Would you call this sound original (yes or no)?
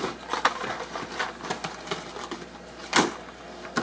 yes